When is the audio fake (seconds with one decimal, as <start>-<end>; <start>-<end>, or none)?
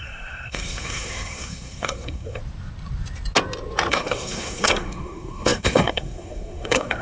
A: 0.0-2.4; 3.9-7.0